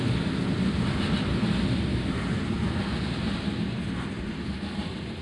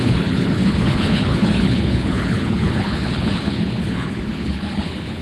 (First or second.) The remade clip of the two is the second